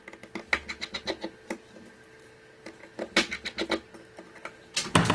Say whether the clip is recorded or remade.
recorded